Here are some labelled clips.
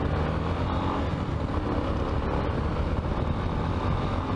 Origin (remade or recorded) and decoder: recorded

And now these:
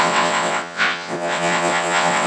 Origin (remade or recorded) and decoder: remade, vocoder, WaveNeXt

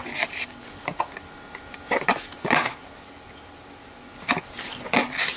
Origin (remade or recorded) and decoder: recorded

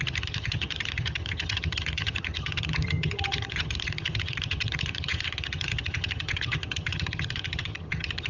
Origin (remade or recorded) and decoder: remade, vocoder, HiFi-GAN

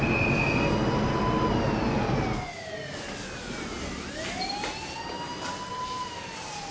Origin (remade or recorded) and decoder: recorded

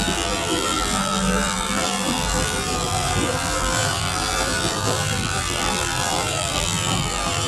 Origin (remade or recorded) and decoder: remade, vocoder, BigVGAN v2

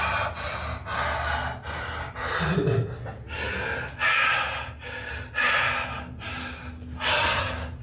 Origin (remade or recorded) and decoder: recorded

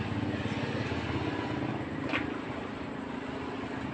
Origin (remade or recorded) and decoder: recorded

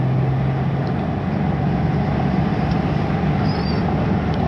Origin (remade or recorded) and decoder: recorded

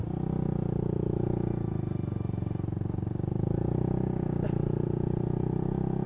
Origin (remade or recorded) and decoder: recorded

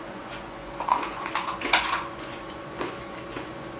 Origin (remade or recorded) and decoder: remade, vocoder, Vocos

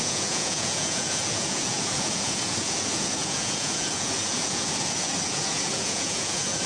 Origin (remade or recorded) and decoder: remade, vocoder, Vocos